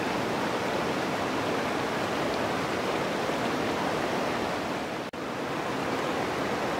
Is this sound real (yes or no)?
yes